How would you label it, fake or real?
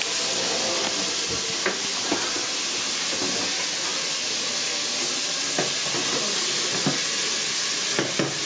real